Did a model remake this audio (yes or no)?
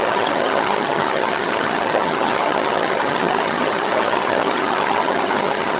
yes